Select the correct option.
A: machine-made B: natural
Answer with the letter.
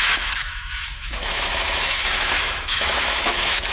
A